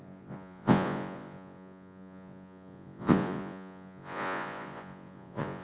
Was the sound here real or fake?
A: fake